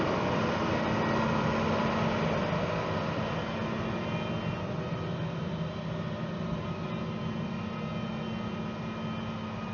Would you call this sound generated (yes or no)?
no